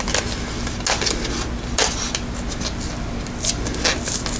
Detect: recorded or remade recorded